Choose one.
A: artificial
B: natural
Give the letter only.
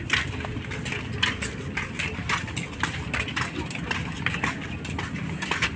B